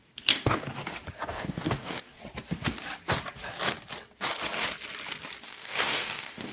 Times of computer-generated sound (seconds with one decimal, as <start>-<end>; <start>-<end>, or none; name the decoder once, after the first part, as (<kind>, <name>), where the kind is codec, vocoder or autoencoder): 0.0-0.8 (codec, DAC); 1.3-2.2; 5.4-6.5